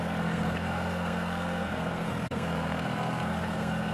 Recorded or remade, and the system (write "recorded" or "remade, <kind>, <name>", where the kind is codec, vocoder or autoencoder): remade, codec, SNAC